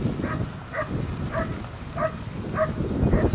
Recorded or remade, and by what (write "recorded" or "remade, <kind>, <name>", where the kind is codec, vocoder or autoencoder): recorded